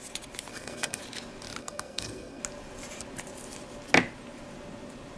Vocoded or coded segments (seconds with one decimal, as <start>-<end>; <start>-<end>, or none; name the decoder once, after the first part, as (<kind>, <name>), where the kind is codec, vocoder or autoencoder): 0.5-1.0 (codec, SNAC); 1.6-2.4